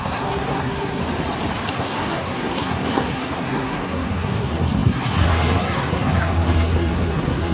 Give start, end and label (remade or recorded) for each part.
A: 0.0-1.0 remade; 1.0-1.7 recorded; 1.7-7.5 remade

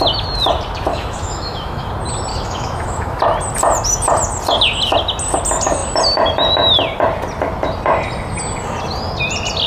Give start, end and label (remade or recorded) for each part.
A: 0.0-0.9 recorded; 0.9-1.9 remade; 1.9-2.3 recorded; 2.3-3.2 remade; 3.2-9.7 recorded

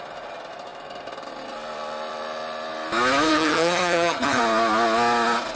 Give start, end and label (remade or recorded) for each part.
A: 0.0-3.3 recorded; 3.3-4.4 remade; 4.4-5.6 recorded

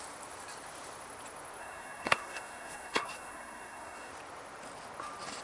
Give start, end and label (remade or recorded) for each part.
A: 0.0-1.6 recorded; 1.6-4.1 remade; 4.1-5.4 recorded

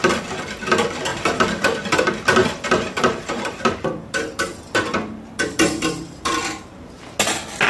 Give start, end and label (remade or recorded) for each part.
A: 0.0-1.1 recorded; 1.1-2.0 remade; 2.0-2.4 recorded; 2.4-7.0 remade; 7.0-7.7 recorded